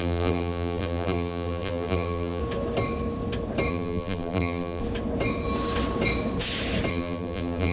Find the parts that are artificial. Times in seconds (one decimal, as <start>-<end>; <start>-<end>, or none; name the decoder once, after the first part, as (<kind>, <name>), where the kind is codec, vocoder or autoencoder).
0.0-2.4 (vocoder, BigVGAN v2); 3.7-4.8; 6.9-7.7